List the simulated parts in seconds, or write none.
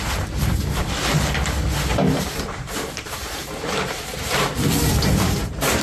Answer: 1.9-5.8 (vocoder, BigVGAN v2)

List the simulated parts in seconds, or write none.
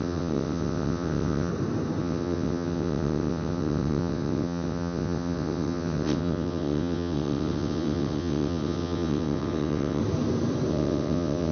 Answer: 0.0-1.5 (vocoder, WaveNeXt); 2.0-10.0; 10.7-11.5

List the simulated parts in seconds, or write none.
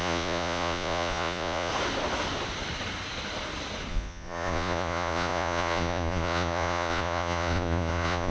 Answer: 0.0-1.7 (vocoder, Vocos); 3.9-8.3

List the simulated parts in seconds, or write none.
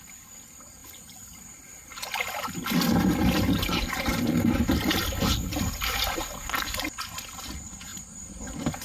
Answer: none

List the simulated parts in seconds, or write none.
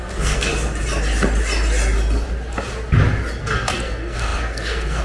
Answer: 0.0-0.5 (codec, SNAC); 3.4-5.0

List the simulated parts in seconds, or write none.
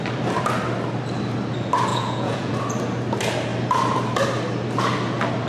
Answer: 1.9-2.5 (vocoder, Vocos)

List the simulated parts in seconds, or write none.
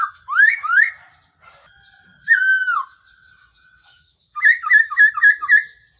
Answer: 0.0-0.9 (autoencoder, DAC-VAE); 3.8-5.1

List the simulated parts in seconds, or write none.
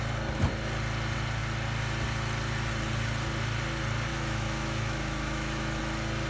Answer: 4.1-5.8 (autoencoder, DAC-VAE)